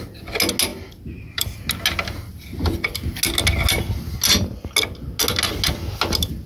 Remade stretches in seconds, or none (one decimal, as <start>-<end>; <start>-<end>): 0.7-1.6